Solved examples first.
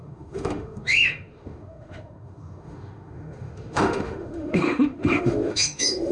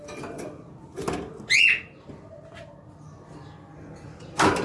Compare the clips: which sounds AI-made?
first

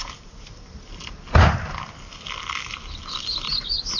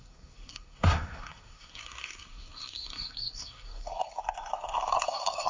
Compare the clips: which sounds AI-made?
second